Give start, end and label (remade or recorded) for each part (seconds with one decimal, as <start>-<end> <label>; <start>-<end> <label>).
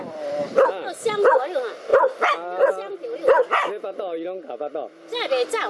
0.0-5.7 recorded